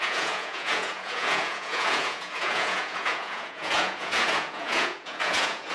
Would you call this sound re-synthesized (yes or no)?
yes